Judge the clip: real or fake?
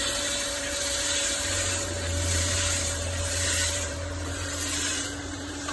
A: fake